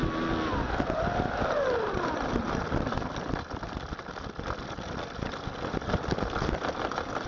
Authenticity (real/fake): real